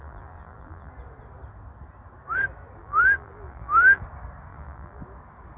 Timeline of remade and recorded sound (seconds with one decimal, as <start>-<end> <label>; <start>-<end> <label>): 0.0-0.9 remade; 0.9-2.8 recorded; 2.8-4.0 remade; 4.0-4.5 recorded; 4.5-5.0 remade; 5.0-5.6 recorded